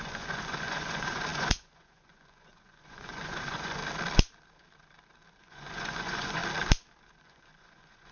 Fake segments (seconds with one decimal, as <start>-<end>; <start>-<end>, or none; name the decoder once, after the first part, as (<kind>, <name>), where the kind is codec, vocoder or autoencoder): 0.0-3.8 (vocoder, Vocos); 5.4-6.4; 7.2-8.1